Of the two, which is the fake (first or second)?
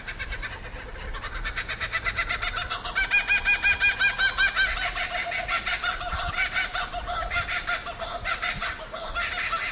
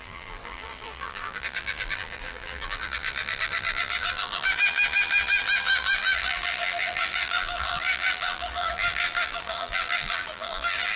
second